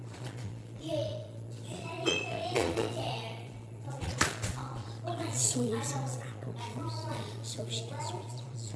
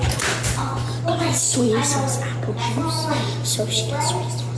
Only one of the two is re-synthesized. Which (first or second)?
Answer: first